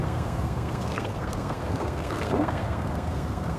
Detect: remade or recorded remade